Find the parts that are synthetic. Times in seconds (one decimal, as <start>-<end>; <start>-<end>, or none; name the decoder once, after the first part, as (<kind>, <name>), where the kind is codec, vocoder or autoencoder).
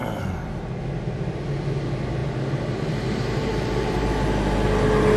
2.2-4.2 (vocoder, BigVGAN v2)